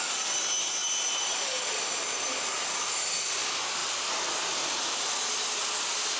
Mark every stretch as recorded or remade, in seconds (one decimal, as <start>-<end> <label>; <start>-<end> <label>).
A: 0.0-6.2 recorded